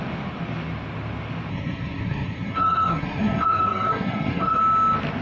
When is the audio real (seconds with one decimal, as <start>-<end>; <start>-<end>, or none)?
0.0-1.5; 4.6-5.2